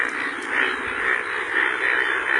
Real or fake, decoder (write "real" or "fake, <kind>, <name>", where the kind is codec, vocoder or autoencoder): real